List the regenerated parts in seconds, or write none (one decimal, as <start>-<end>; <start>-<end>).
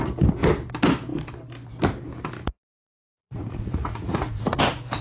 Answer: 3.1-4.6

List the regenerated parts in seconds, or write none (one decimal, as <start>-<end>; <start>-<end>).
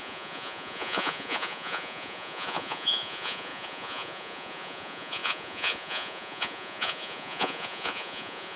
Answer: 0.0-8.6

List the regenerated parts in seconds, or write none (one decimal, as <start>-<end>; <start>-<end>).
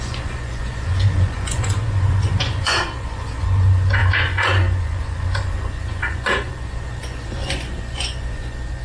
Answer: 0.0-8.8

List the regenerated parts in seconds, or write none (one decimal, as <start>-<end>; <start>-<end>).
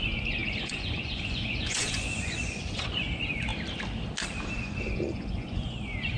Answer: 0.0-3.5; 4.6-6.2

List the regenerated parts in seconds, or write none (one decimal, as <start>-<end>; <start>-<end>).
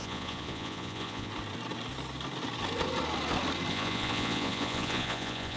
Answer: 0.0-1.3; 3.7-5.6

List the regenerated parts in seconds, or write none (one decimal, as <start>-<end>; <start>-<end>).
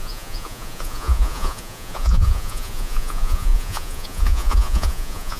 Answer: 0.0-5.4